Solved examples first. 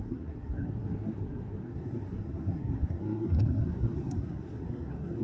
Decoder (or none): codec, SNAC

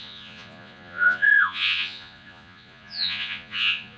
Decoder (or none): vocoder, Vocos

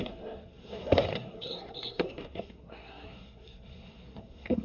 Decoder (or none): codec, SNAC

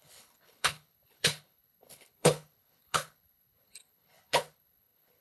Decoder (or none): codec, HILCodec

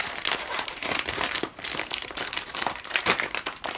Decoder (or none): vocoder, BigVGAN v2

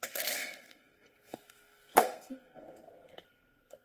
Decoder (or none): codec, SNAC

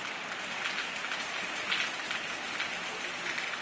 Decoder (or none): none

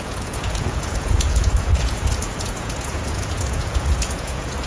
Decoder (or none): vocoder, Vocos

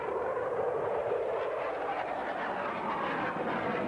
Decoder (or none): none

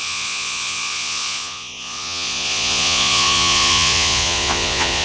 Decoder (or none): vocoder, Vocos